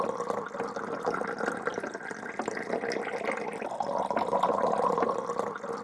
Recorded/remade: recorded